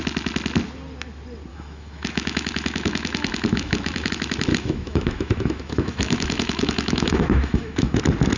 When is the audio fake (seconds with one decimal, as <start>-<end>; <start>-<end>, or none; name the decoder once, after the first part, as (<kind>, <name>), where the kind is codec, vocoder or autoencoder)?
1.5-4.1 (autoencoder, DAC-VAE); 4.5-8.0